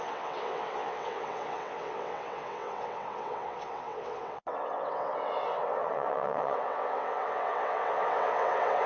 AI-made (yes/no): yes